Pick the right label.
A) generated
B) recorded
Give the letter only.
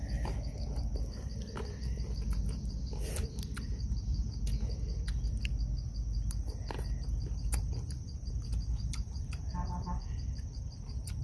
B